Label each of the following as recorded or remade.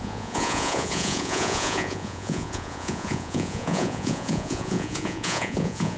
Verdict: remade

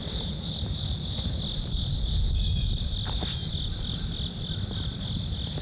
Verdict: recorded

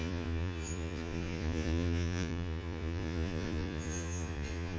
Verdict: remade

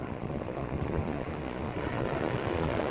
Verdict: remade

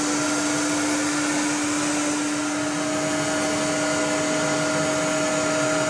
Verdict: recorded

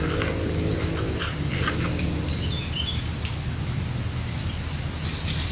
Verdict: recorded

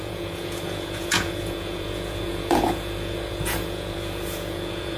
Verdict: remade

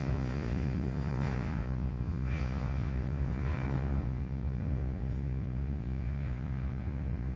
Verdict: remade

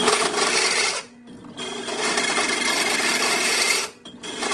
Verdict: recorded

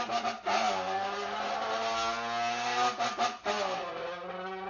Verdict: recorded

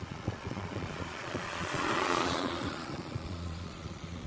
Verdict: remade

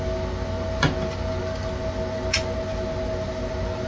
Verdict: recorded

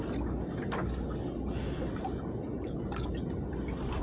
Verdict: recorded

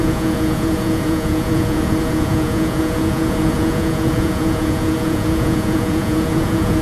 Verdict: remade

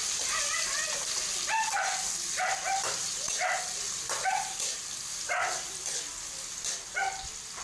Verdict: recorded